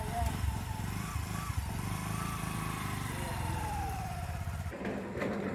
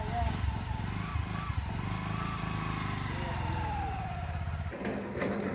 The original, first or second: second